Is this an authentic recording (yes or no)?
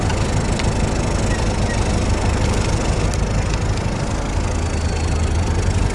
yes